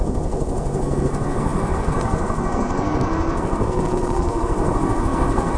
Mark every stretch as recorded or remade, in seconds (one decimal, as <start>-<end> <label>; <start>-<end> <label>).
0.0-5.6 remade